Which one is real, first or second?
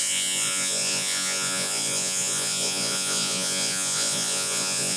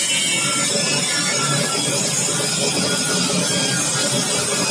second